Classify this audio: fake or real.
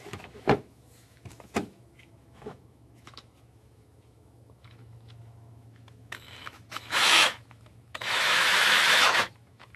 fake